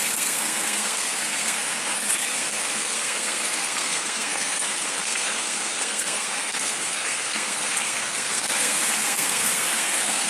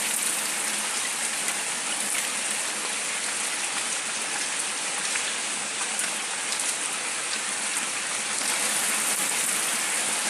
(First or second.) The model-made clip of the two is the first